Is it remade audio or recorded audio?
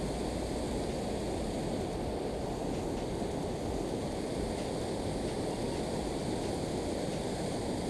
recorded